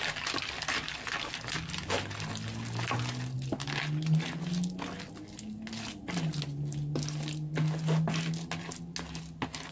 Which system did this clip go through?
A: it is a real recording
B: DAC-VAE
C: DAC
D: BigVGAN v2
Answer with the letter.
A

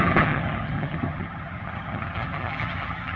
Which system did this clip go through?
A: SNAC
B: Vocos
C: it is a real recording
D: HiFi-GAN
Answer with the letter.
D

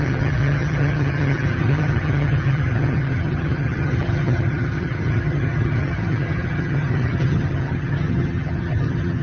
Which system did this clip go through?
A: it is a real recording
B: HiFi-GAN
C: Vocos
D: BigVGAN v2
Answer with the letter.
B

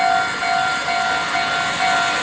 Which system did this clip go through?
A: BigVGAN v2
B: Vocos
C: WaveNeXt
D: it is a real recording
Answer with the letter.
D